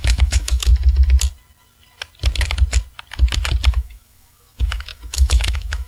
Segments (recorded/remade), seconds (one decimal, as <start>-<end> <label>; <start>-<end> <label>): 0.0-0.7 remade; 0.7-3.7 recorded; 3.7-5.9 remade